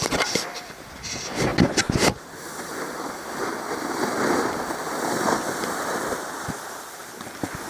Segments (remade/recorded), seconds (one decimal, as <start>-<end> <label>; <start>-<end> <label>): 0.0-7.7 recorded